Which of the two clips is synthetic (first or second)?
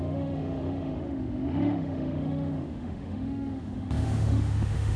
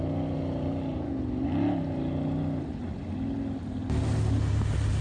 first